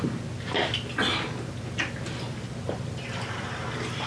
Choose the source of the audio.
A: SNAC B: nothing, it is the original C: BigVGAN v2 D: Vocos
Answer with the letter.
B